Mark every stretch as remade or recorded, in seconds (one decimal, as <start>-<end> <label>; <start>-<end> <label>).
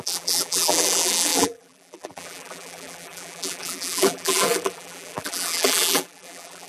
0.0-6.7 remade